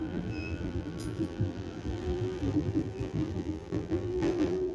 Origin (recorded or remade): remade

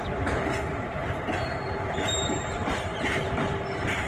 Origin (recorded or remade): remade